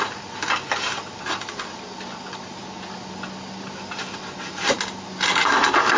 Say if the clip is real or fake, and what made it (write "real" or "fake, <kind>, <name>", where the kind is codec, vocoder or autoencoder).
real